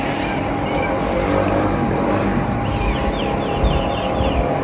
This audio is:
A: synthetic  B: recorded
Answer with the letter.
B